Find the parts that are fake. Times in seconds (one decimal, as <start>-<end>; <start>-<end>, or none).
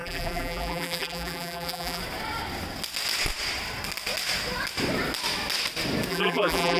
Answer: 0.0-2.0; 6.1-6.8